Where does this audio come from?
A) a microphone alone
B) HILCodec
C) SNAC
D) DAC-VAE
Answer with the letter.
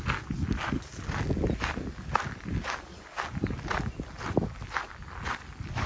A